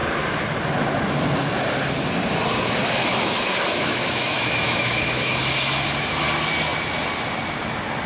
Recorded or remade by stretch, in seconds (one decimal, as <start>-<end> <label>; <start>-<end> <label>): 0.0-3.1 recorded; 3.1-5.4 remade; 5.4-8.1 recorded